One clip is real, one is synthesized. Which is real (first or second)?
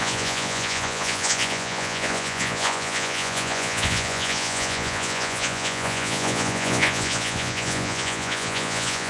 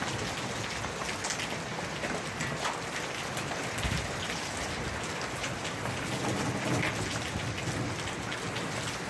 second